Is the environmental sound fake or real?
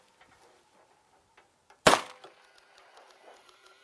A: real